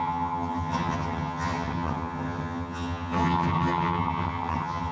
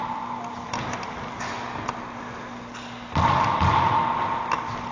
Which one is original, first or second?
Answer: second